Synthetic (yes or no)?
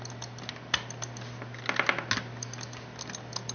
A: no